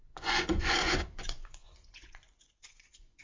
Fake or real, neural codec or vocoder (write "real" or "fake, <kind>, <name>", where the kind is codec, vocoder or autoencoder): fake, vocoder, Vocos